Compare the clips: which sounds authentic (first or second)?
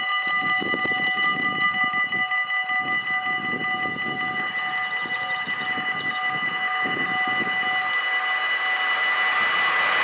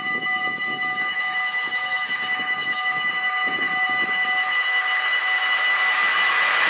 first